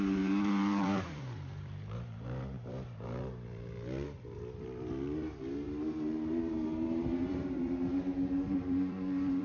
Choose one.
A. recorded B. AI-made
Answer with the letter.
B